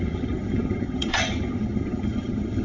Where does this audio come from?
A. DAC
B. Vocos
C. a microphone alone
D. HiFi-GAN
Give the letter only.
D